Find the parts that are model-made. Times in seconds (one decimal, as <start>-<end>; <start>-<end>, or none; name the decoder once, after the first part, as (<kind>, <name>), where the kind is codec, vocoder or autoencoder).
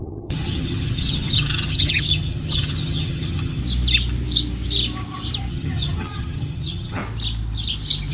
0.0-3.6 (vocoder, HiFi-GAN); 5.5-7.0